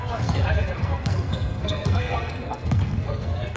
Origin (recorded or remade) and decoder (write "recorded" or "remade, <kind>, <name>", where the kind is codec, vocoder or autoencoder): remade, codec, SNAC